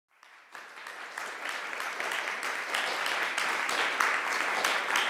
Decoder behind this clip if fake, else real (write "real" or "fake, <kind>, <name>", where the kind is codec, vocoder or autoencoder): real